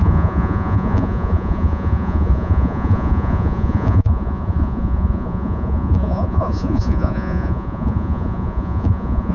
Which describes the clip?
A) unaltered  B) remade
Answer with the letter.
B